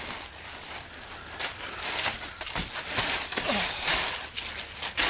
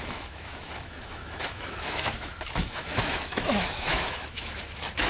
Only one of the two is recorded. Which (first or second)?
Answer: first